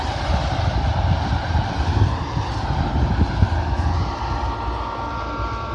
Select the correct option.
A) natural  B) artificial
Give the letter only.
A